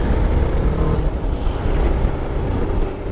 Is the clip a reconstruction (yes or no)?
yes